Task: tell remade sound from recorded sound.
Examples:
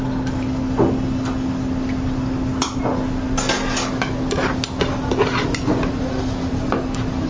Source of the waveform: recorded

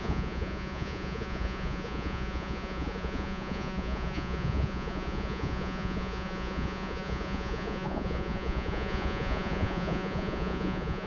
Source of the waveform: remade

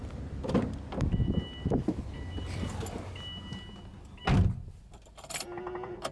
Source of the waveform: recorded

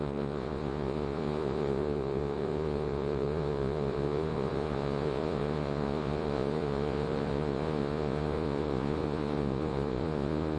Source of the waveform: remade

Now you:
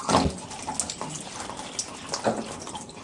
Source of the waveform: recorded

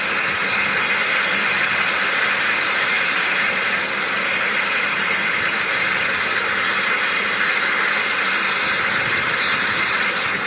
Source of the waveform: recorded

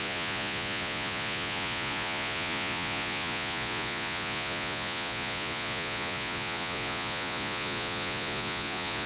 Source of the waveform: remade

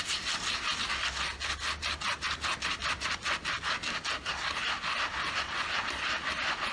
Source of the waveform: recorded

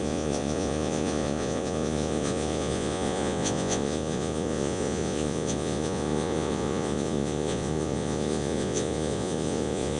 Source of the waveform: remade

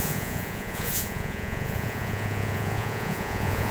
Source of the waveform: remade